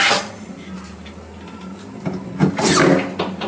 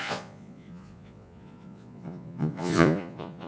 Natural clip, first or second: first